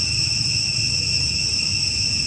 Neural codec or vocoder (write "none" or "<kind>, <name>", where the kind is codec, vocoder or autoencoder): none